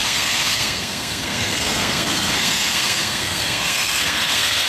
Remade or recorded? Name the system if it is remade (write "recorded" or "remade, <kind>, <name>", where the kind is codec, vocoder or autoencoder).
remade, codec, SNAC